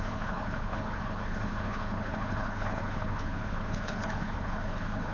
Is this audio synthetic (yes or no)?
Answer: yes